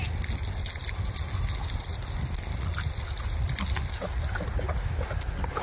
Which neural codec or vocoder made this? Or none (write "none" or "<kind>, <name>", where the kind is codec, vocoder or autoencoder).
none